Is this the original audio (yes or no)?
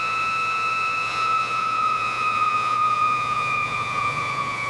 no